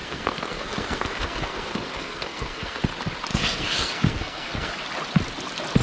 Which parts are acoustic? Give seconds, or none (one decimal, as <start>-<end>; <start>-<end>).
2.8-3.3; 4.7-5.8